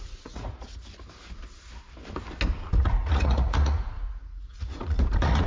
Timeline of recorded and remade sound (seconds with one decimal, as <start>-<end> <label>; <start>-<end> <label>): 0.0-0.8 remade; 0.8-2.8 recorded; 2.8-5.5 remade